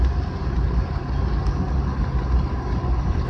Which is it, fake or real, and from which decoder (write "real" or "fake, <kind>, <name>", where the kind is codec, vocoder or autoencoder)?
real